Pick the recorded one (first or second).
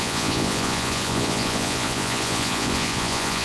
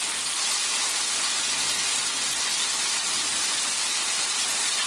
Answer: second